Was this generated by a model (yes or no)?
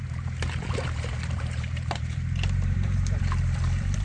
yes